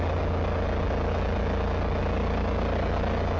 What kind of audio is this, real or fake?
real